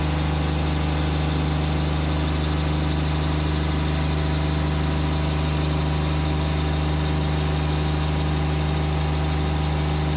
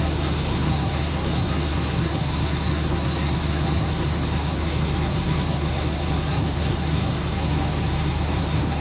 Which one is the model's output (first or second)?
second